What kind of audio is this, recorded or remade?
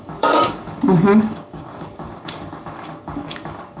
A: remade